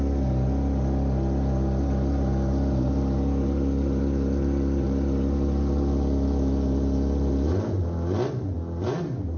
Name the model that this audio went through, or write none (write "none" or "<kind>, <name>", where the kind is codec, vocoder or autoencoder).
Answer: none